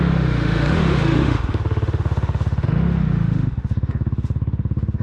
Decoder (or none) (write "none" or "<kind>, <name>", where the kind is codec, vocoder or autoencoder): autoencoder, DAC-VAE